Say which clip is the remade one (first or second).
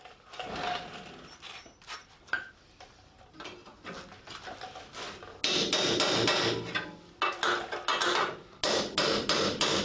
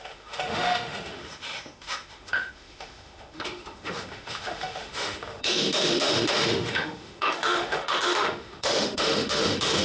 second